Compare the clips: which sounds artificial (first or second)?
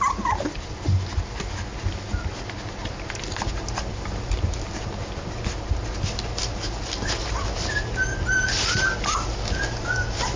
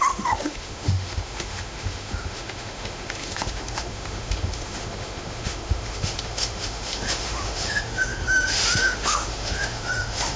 second